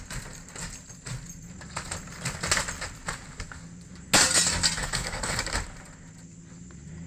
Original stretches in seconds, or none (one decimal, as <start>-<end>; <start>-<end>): 0.0-4.8; 5.3-7.1